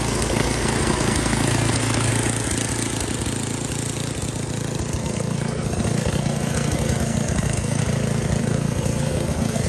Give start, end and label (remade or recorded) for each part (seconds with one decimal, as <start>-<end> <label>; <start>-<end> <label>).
0.0-2.1 remade; 2.1-5.0 recorded; 5.0-7.8 remade; 7.8-8.4 recorded; 8.4-9.7 remade